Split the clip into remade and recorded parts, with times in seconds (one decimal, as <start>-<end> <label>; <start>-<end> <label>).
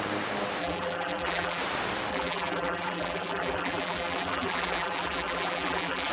0.0-0.6 recorded; 0.6-1.6 remade; 1.6-2.1 recorded; 2.1-6.1 remade